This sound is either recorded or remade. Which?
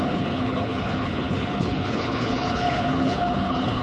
remade